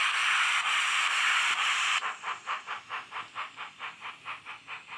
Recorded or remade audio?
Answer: remade